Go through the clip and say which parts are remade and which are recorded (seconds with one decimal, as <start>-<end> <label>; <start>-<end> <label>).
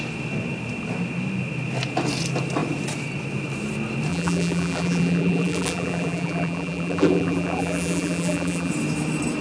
0.0-4.1 recorded; 4.1-8.7 remade; 8.7-9.4 recorded